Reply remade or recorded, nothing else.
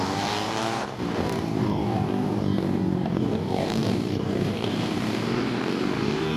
remade